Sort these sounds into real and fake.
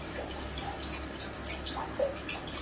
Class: real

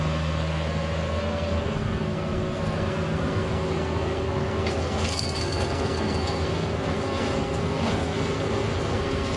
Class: fake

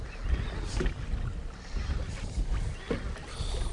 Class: real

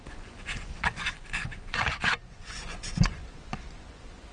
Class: fake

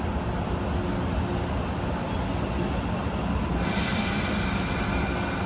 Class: real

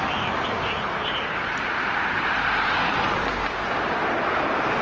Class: fake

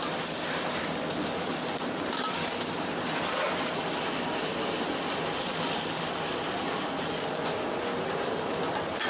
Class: real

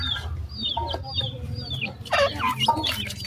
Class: real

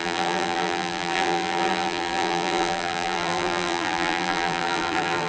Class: fake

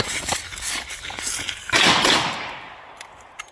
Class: real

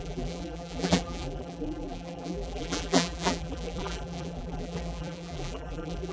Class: fake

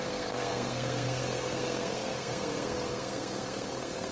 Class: fake